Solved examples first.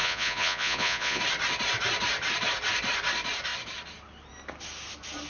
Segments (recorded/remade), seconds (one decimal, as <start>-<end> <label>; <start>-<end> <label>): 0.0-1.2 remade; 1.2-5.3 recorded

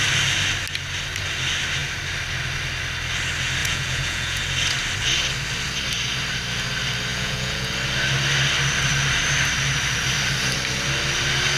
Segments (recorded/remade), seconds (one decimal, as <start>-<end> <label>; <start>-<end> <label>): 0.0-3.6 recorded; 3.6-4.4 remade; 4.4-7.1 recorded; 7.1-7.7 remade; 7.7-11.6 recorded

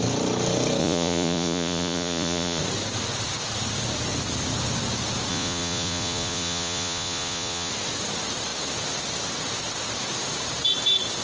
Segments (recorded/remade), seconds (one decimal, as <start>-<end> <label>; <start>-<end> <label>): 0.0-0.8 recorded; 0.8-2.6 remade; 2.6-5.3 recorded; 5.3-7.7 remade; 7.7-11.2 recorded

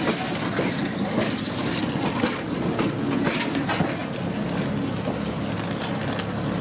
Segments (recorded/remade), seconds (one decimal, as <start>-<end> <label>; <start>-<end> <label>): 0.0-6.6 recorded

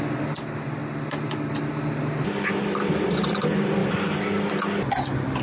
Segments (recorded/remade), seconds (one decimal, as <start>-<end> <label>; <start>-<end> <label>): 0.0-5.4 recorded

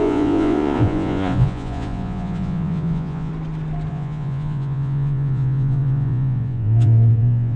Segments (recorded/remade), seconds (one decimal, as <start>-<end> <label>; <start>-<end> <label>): 0.0-3.3 remade; 3.3-3.9 recorded; 3.9-7.6 remade